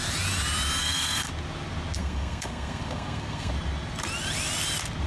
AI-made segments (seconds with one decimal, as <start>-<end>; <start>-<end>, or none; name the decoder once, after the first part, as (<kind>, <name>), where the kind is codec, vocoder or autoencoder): 0.8-1.3 (codec, SNAC); 2.0-3.5